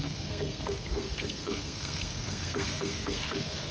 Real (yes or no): no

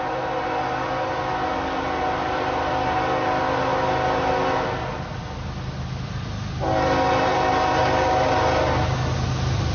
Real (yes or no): yes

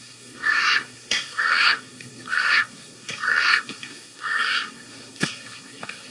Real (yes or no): no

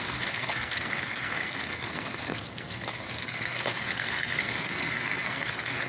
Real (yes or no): no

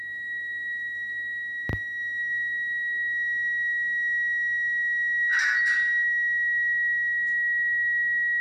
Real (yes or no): yes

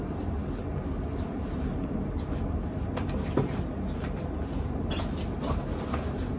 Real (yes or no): yes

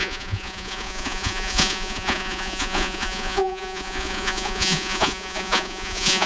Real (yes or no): no